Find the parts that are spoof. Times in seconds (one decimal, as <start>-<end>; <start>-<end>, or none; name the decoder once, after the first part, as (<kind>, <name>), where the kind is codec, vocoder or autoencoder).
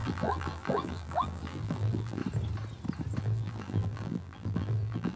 0.0-2.2 (vocoder, BigVGAN v2); 3.2-5.2